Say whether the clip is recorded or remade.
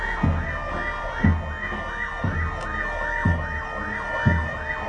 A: recorded